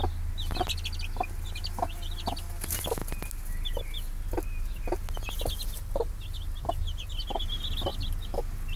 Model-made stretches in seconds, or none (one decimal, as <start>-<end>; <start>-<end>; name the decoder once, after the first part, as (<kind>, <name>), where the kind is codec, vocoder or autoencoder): none